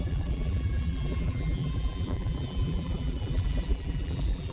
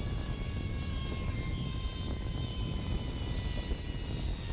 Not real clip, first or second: first